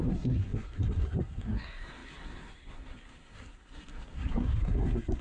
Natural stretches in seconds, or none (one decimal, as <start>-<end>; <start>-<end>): none